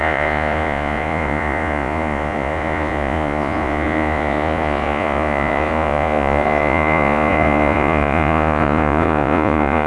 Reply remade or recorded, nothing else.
remade